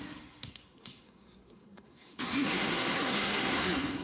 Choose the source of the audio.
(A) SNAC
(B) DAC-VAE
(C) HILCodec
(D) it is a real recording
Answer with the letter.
A